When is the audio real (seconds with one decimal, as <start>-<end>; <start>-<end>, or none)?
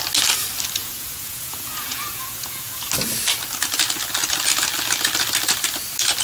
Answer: 0.0-0.8; 2.9-6.2